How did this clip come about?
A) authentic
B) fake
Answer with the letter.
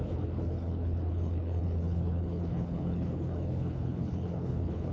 B